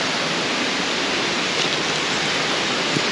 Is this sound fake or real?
real